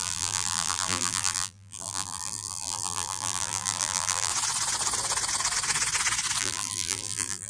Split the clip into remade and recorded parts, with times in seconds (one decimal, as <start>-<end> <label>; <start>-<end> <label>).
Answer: 0.0-4.3 remade; 4.3-6.4 recorded; 6.4-7.5 remade